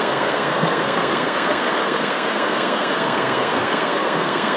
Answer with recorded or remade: remade